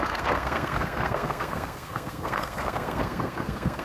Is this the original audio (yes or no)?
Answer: no